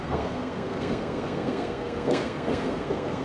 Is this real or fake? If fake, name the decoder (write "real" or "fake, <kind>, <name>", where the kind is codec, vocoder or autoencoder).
fake, codec, SNAC